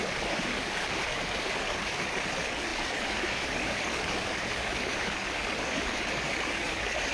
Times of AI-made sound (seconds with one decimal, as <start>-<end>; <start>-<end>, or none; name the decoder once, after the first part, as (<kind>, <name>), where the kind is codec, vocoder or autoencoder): 0.0-7.1 (codec, DAC)